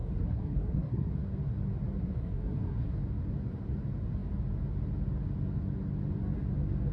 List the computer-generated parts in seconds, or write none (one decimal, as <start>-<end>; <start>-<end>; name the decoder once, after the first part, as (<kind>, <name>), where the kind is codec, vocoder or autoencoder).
0.0-1.1 (codec, SNAC); 2.0-3.0